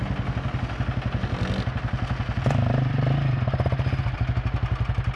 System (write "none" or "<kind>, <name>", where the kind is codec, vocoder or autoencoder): none